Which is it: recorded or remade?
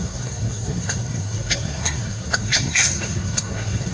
remade